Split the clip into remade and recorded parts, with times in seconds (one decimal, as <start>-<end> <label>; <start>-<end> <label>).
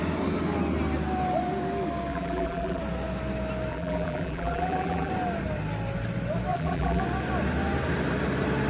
0.0-2.1 recorded; 2.1-2.8 remade; 2.8-3.7 recorded; 3.7-5.1 remade; 5.1-6.5 recorded; 6.5-7.0 remade; 7.0-8.7 recorded